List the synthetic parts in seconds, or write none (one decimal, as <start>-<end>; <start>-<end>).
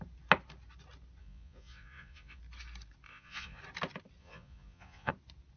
1.2-2.4; 3.1-3.6; 4.2-5.1